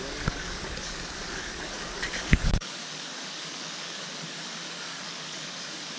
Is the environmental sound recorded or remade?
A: remade